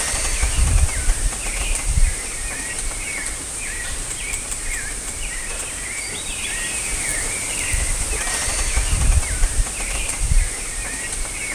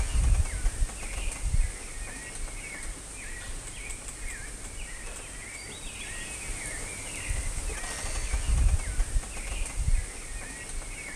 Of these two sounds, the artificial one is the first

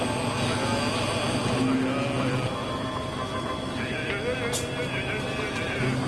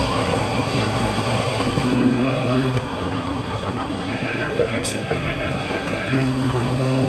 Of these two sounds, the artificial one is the second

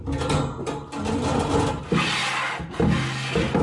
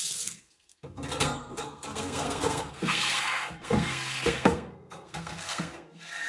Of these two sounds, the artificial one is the second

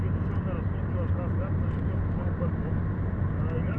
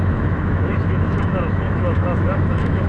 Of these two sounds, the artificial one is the second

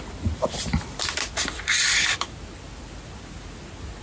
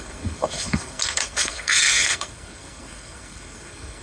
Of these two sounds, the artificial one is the second